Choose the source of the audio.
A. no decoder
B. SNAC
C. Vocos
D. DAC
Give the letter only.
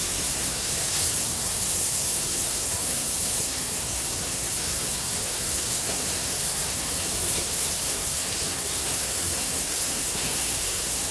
B